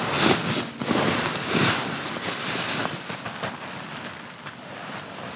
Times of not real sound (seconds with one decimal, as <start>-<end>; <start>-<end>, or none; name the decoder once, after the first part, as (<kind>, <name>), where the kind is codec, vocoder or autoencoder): none